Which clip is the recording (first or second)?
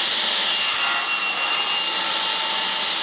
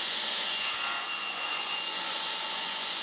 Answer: first